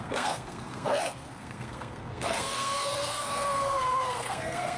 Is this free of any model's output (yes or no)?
no